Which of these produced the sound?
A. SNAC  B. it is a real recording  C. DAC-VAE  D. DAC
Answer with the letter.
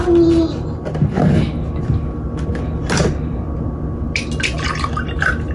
B